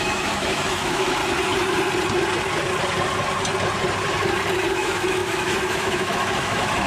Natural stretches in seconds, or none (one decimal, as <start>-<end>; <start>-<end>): 1.2-4.7